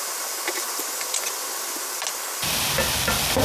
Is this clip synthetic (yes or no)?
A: yes